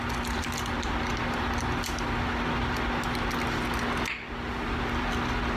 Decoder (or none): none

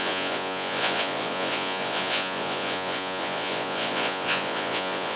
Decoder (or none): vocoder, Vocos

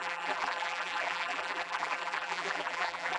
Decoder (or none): vocoder, BigVGAN v2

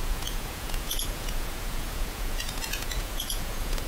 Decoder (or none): vocoder, Vocos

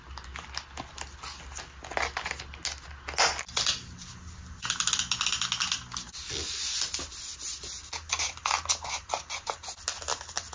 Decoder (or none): none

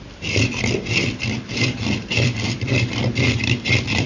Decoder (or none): vocoder, BigVGAN v2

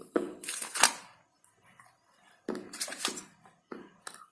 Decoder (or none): none